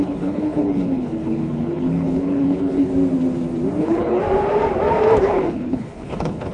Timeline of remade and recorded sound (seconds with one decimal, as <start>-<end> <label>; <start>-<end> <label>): 0.0-2.9 remade; 2.9-3.8 recorded; 3.8-4.2 remade; 4.2-5.2 recorded; 5.2-6.5 remade